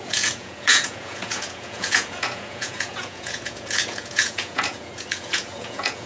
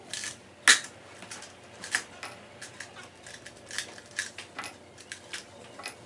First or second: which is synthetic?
first